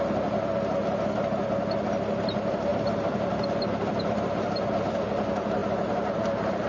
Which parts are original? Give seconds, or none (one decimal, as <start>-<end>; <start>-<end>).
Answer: 0.0-2.7; 5.0-6.7